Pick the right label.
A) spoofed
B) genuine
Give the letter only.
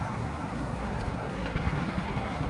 A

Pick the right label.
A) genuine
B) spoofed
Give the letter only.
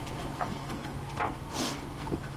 B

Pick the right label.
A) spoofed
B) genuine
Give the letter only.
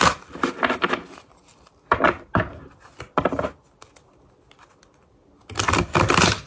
B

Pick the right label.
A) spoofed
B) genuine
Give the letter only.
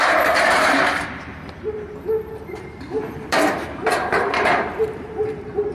A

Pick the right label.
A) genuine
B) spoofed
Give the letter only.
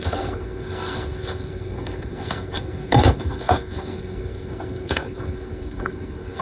B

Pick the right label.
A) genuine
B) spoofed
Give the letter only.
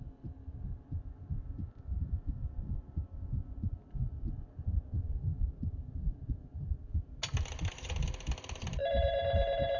A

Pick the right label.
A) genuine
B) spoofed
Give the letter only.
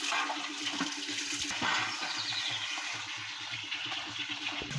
A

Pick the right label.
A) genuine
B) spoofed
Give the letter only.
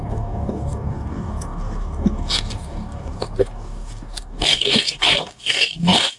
B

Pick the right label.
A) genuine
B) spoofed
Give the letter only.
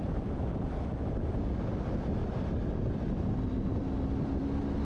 A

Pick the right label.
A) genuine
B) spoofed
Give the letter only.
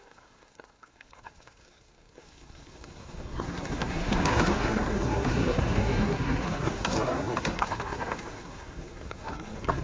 B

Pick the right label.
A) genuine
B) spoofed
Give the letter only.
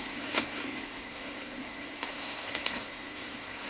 B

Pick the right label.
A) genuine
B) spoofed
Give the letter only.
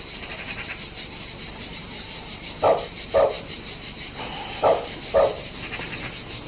A